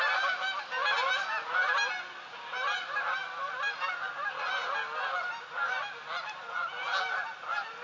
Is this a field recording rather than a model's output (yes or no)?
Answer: yes